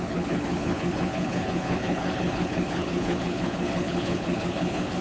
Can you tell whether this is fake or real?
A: fake